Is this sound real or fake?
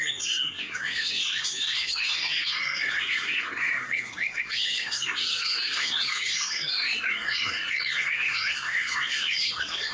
fake